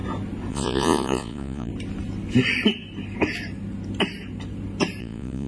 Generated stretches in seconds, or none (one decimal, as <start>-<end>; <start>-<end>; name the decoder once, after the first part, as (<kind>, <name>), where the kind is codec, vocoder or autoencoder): 0.5-1.7 (vocoder, Vocos); 5.0-5.5